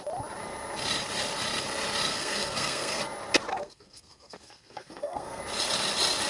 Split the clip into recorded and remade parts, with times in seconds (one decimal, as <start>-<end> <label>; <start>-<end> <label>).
0.0-2.1 recorded; 2.1-3.0 remade; 3.0-3.5 recorded; 3.5-5.4 remade; 5.4-6.3 recorded